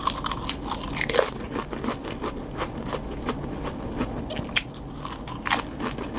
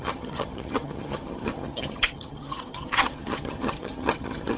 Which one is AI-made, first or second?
second